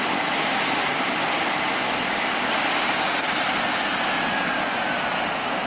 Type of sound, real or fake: real